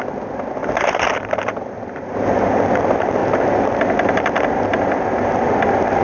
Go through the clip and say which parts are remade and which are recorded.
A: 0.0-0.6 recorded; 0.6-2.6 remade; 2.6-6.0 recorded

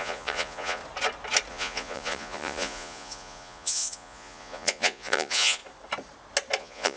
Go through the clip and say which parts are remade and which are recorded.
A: 0.0-0.8 remade; 0.8-1.5 recorded; 1.5-5.6 remade; 5.6-6.6 recorded; 6.6-7.0 remade

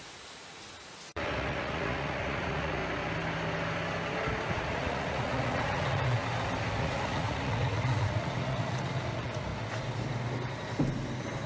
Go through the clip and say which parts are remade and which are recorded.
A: 0.0-2.8 remade; 2.8-4.5 recorded; 4.5-6.2 remade; 6.2-6.8 recorded; 6.8-9.5 remade; 9.5-11.5 recorded

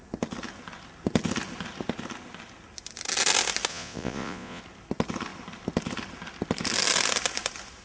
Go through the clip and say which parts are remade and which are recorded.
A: 0.0-3.7 recorded; 3.7-4.6 remade; 4.6-7.8 recorded